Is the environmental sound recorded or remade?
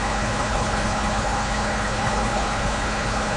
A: remade